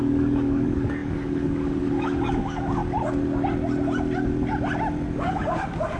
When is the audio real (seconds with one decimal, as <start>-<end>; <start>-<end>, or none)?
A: 2.8-5.2